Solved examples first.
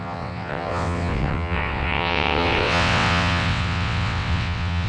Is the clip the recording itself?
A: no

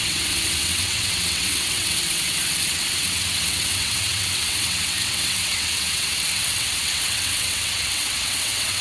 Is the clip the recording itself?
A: no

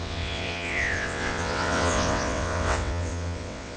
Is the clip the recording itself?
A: no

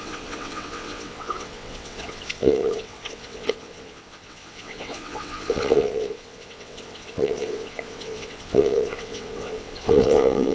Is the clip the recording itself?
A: no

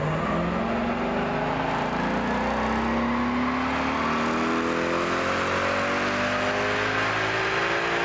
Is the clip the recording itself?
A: yes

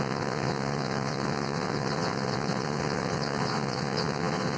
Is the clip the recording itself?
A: no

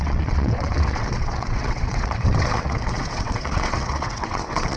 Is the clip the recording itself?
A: no